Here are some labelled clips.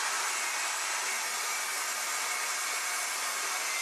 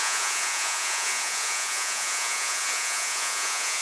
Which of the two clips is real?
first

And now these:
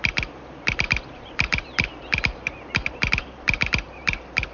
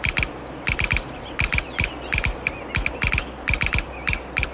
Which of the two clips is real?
second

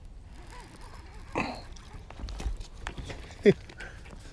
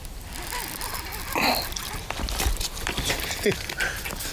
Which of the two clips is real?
first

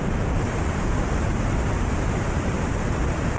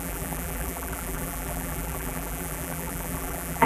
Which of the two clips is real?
first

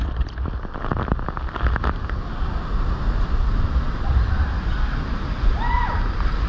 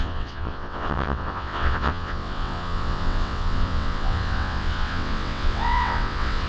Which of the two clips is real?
first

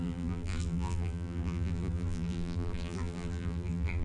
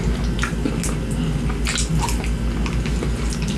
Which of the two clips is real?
second